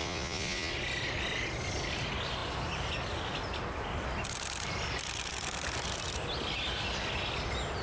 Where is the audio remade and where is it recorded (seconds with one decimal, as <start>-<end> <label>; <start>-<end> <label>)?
0.0-0.7 remade; 0.7-7.8 recorded